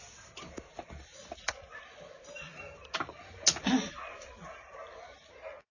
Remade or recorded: recorded